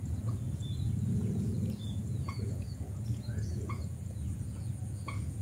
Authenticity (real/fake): fake